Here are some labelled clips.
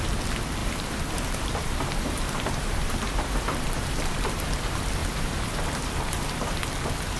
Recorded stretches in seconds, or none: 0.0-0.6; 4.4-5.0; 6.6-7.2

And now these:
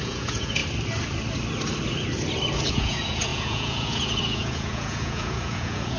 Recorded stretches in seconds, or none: 0.6-2.7

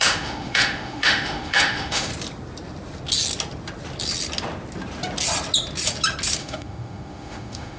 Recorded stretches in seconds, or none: 2.1-6.4

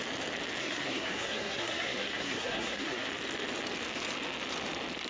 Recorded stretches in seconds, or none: 0.0-0.6; 3.1-5.1

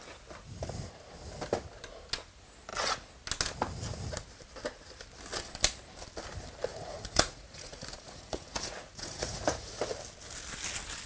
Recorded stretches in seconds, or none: 0.0-6.7; 9.8-11.1

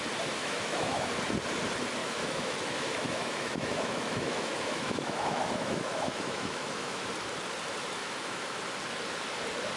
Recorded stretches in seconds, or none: 0.0-0.4; 1.1-2.0; 7.1-8.0; 8.6-9.8